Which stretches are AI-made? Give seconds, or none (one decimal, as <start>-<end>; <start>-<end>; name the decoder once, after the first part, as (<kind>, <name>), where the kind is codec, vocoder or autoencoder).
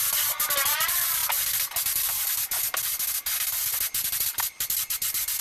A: none